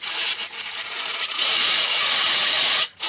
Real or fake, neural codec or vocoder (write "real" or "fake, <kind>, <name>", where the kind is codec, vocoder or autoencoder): fake, vocoder, Vocos